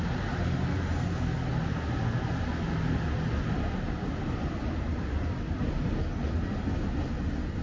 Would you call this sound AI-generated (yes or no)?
no